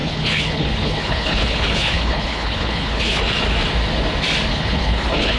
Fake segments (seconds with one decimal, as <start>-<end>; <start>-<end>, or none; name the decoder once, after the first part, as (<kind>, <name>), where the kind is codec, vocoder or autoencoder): 0.0-3.2 (codec, HILCodec); 4.5-5.4